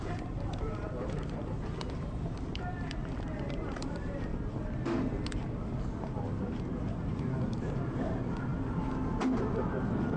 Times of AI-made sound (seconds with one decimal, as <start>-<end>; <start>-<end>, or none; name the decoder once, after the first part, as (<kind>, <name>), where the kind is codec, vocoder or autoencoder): 0.0-3.0 (vocoder, BigVGAN v2); 3.5-4.3; 6.8-8.5

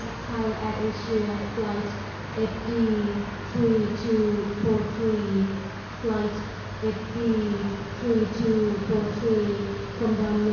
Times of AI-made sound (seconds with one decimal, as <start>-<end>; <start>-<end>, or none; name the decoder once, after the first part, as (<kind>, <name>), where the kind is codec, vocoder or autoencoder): none